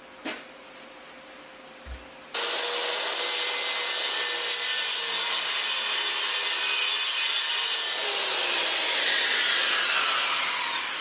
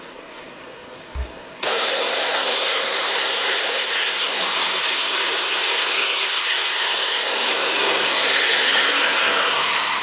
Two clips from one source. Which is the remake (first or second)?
second